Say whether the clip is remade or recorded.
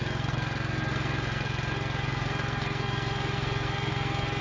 remade